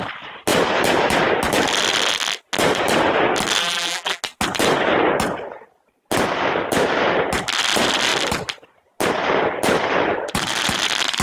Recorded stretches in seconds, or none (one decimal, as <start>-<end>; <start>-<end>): 0.0-3.6; 4.2-11.2